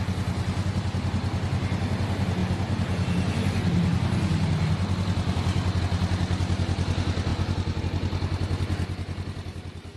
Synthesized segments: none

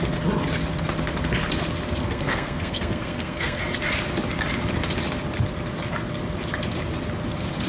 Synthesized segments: 2.0-3.6 (codec, SNAC)

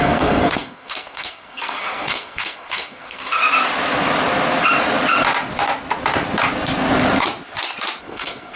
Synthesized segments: 0.0-3.4 (codec, SNAC); 8.0-8.6